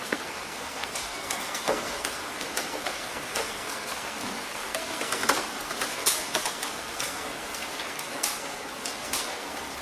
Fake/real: fake